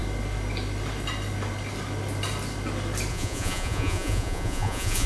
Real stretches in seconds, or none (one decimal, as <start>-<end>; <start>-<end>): 0.0-3.1